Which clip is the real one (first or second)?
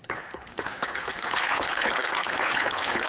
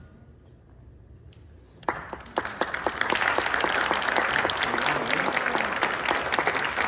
second